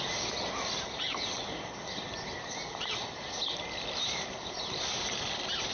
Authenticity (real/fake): real